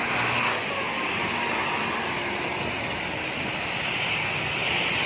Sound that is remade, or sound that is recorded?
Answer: recorded